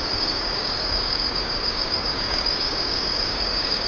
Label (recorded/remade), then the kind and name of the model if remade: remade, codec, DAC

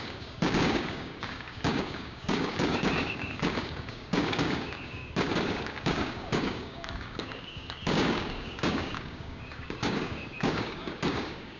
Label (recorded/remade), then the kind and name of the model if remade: remade, codec, DAC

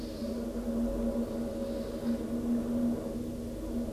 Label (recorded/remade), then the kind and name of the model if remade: recorded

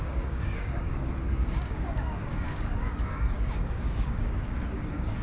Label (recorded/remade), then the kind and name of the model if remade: remade, codec, DAC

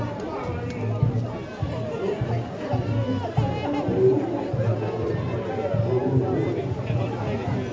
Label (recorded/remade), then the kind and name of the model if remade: recorded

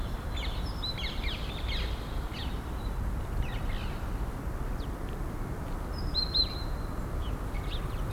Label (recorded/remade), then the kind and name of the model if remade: recorded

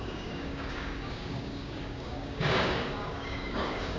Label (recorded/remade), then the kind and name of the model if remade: remade, codec, DAC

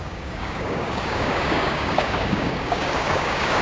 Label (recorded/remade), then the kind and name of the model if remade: remade, codec, DAC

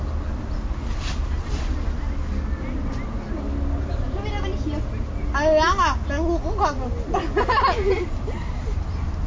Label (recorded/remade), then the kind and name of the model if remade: recorded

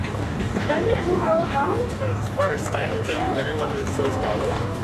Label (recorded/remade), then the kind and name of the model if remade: remade, codec, DAC